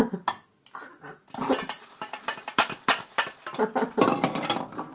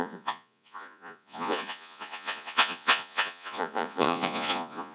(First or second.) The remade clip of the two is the second